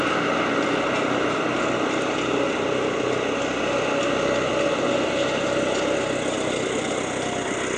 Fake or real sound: real